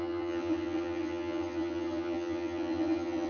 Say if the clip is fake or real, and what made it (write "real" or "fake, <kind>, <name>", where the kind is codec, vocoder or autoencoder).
fake, vocoder, HiFi-GAN